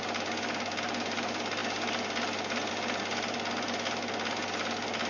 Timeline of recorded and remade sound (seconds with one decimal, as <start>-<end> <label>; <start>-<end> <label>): 0.0-5.1 recorded